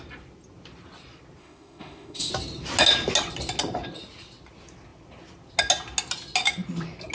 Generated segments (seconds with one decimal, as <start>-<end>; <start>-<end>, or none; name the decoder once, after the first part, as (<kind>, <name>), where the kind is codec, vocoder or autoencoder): 1.4-2.3 (autoencoder, DAC-VAE)